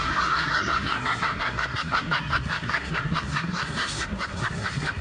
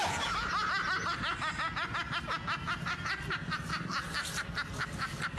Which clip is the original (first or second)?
second